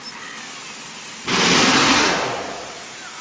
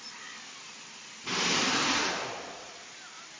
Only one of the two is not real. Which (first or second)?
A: second